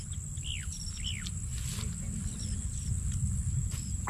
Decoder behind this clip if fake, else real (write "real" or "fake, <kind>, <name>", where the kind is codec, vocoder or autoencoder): real